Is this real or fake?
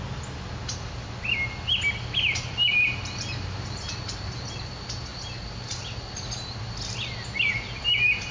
real